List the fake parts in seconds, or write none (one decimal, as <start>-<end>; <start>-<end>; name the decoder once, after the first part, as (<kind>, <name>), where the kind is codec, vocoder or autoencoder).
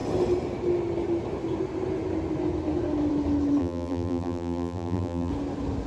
3.6-5.3 (vocoder, BigVGAN v2)